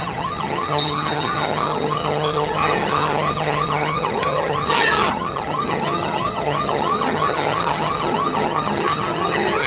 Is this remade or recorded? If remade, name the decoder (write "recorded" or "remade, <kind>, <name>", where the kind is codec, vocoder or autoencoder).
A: remade, vocoder, HiFi-GAN